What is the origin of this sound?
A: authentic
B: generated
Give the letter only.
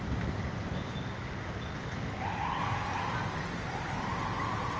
A